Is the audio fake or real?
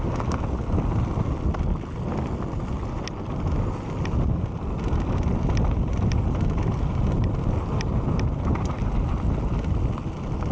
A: real